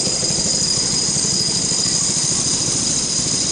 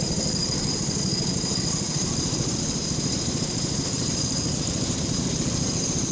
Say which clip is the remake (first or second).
second